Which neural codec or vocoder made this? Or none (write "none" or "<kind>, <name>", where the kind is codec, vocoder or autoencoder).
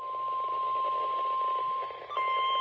vocoder, BigVGAN v2